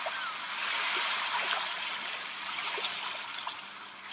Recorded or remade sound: recorded